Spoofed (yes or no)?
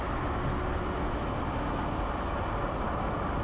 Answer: no